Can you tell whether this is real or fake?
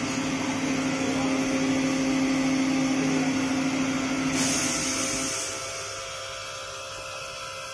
real